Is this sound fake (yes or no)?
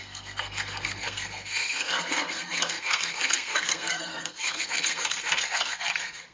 yes